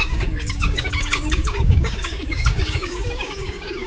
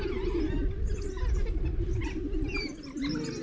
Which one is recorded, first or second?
second